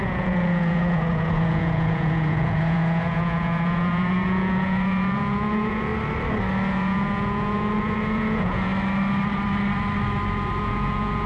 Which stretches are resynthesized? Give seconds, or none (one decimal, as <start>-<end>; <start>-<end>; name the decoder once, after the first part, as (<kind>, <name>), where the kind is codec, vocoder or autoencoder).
0.0-5.9 (vocoder, Vocos); 6.7-8.7; 10.6-11.3